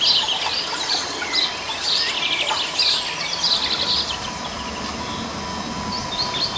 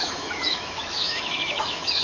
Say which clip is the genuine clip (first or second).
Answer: first